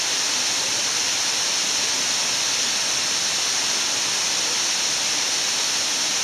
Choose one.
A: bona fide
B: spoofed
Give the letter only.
A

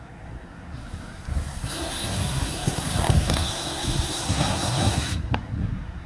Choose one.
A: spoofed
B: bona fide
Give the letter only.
A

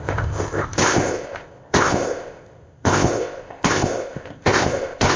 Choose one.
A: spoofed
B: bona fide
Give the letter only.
A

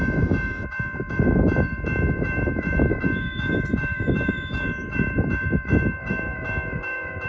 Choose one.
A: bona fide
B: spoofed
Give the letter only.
B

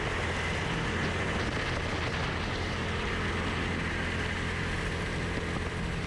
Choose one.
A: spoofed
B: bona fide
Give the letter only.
B